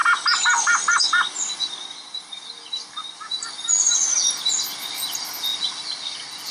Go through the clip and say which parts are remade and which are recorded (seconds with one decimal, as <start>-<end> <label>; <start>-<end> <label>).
0.0-6.5 recorded